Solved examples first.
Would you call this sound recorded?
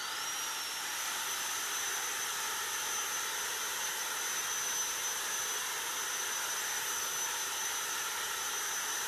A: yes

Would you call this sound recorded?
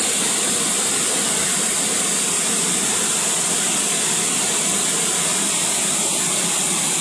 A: yes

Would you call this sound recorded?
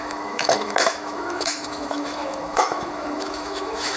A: no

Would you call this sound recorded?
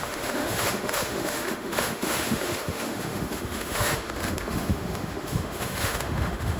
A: no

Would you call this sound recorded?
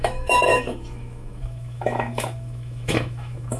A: no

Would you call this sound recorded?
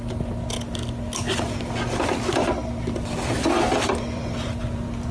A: yes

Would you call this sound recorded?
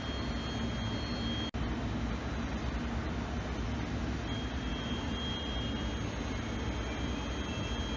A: yes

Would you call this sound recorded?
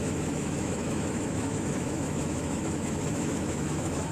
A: no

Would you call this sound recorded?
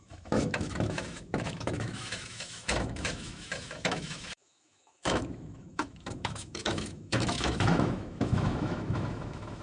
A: no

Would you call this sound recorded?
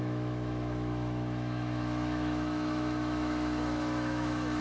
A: no